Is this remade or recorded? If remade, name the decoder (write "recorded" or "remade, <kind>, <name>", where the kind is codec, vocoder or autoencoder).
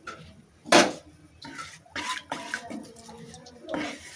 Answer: recorded